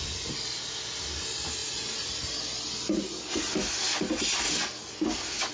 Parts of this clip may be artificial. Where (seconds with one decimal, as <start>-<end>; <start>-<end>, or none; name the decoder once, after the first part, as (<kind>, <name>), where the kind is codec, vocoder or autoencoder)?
none